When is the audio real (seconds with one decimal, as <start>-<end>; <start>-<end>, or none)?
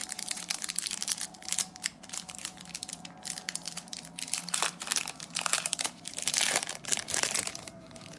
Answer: none